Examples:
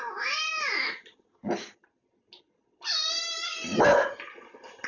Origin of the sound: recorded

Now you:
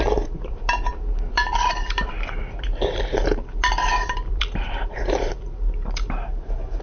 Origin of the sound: remade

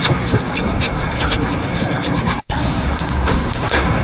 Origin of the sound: remade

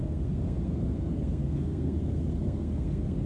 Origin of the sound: remade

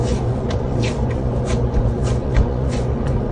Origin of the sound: remade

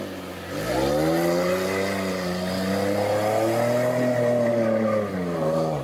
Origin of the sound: recorded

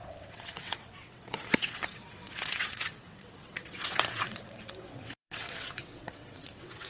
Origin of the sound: remade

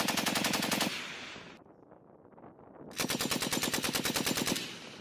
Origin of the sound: recorded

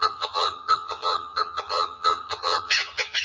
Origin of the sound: remade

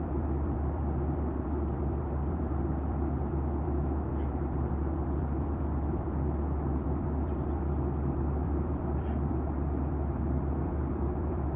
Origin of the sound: remade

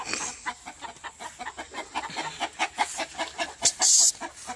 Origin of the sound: recorded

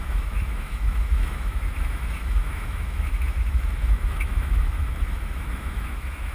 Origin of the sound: remade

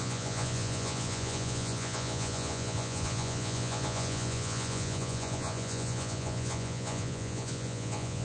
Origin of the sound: remade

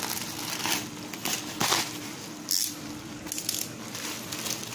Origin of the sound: recorded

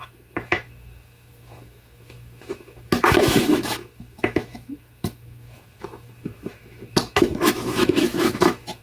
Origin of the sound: remade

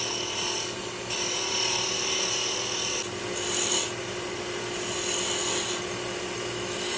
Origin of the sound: recorded